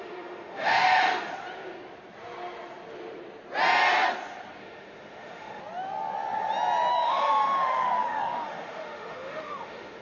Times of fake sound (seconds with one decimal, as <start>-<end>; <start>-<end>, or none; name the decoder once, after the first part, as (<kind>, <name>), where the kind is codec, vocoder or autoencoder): 0.0-1.3 (autoencoder, DAC-VAE); 4.6-5.6; 6.9-10.0